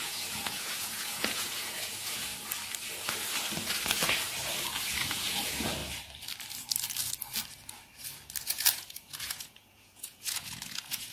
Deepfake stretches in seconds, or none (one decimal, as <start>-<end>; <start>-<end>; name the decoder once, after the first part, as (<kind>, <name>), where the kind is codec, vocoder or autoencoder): 0.0-2.3 (vocoder, Vocos); 4.9-5.8; 8.4-11.1